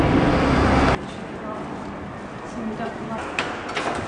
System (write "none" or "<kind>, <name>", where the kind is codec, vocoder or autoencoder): none